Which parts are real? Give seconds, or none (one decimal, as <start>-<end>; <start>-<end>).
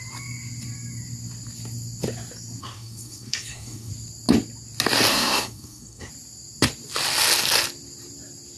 0.0-2.6; 3.9-5.1; 6.1-8.6